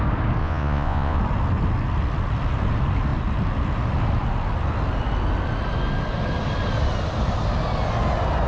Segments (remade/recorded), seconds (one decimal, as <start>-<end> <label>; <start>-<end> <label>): 0.0-0.4 recorded; 0.4-1.2 remade; 1.2-8.5 recorded